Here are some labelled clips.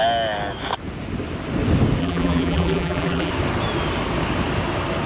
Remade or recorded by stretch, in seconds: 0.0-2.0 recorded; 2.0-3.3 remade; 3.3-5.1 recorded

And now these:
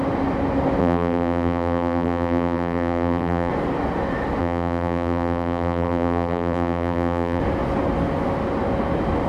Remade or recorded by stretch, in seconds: 0.0-0.8 recorded; 0.8-3.5 remade; 3.5-4.4 recorded; 4.4-7.4 remade; 7.4-9.3 recorded

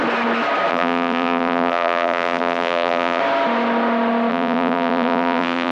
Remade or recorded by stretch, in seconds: 0.0-0.7 recorded; 0.7-3.2 remade; 3.2-4.3 recorded; 4.3-5.7 remade

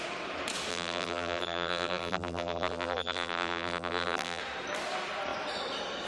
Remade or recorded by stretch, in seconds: 0.0-0.7 recorded; 0.7-4.4 remade; 4.4-6.1 recorded

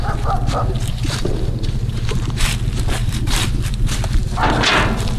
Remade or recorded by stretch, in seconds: 0.0-0.8 recorded; 0.8-2.5 remade; 2.5-3.0 recorded; 3.0-3.5 remade; 3.5-5.2 recorded

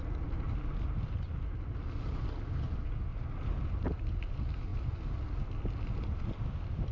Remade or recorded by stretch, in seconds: 0.0-3.1 recorded; 3.1-4.3 remade; 4.3-6.9 recorded

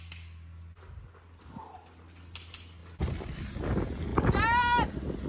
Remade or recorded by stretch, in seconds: 0.0-2.8 recorded; 2.8-3.6 remade; 3.6-5.3 recorded